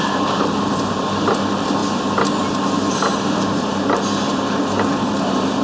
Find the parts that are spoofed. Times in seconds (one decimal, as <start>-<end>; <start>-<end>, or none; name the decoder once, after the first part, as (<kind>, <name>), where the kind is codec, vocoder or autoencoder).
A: 0.0-1.8 (vocoder, BigVGAN v2); 2.4-5.6